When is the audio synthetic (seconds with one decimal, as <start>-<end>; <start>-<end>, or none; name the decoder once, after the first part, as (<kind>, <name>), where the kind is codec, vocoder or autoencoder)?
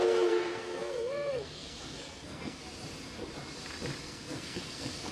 0.0-2.6 (codec, SNAC); 4.0-5.1